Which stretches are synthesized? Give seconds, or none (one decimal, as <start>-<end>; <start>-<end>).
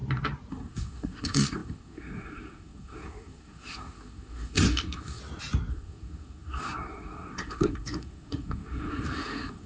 0.5-5.2; 5.7-9.7